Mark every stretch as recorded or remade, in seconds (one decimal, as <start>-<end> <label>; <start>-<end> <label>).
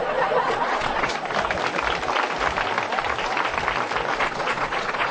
0.0-1.1 remade; 1.1-4.2 recorded; 4.2-5.1 remade